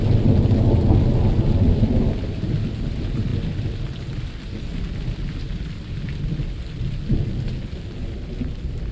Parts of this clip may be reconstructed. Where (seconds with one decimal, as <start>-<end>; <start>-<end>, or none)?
none